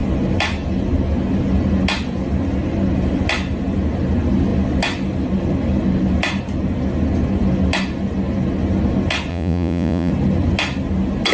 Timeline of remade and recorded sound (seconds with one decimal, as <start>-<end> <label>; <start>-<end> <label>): 0.0-9.3 recorded; 9.3-10.1 remade; 10.1-11.3 recorded